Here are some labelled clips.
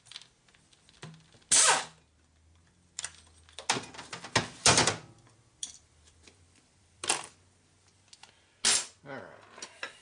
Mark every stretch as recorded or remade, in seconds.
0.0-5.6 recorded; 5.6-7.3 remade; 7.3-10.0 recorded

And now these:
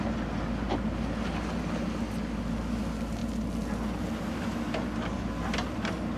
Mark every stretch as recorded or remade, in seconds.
0.0-6.2 recorded

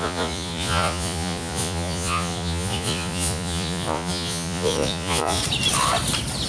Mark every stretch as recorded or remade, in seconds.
0.0-5.4 remade; 5.4-6.5 recorded